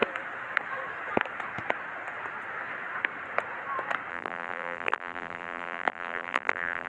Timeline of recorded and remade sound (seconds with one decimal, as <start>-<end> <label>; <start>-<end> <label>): 0.0-4.1 recorded; 4.1-6.9 remade